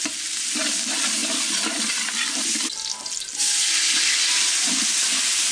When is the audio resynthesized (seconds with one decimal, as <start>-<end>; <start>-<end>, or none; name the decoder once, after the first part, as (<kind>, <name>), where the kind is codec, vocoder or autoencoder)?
none